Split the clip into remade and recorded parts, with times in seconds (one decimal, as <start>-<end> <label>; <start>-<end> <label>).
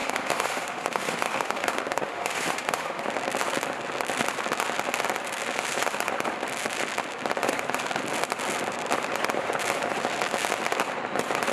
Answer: 0.0-3.0 remade; 3.0-11.5 recorded